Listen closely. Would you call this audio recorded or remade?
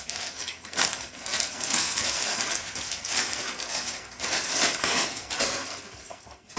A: remade